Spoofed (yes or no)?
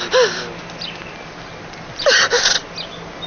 no